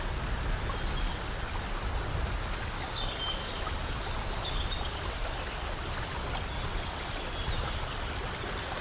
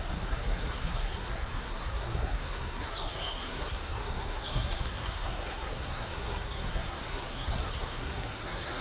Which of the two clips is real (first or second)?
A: first